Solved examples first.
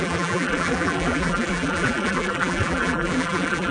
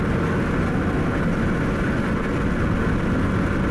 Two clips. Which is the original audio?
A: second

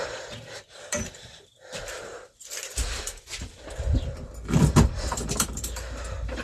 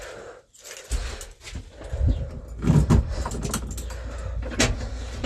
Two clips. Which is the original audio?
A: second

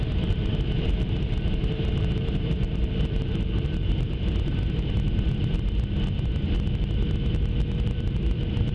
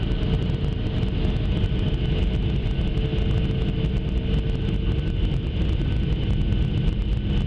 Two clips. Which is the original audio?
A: second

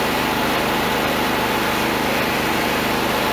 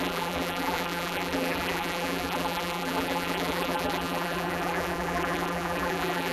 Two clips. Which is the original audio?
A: first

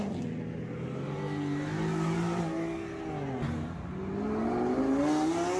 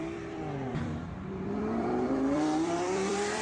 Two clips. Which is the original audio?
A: first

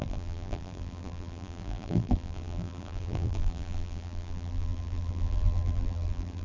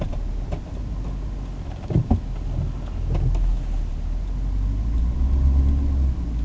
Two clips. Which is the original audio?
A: second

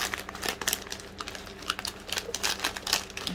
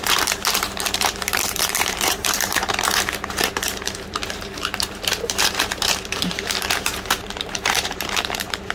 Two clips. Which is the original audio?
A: first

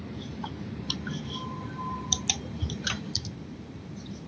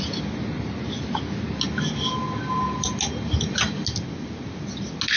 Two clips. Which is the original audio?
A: second